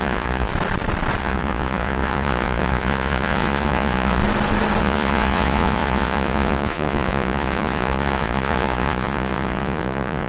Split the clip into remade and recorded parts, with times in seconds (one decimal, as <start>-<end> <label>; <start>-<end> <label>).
0.0-0.5 remade; 0.5-1.2 recorded; 1.2-4.2 remade; 4.2-4.8 recorded; 4.8-10.3 remade